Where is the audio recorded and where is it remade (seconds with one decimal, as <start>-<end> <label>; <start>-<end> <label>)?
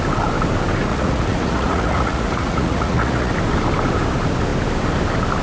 0.0-0.9 recorded; 0.9-3.3 remade; 3.3-5.4 recorded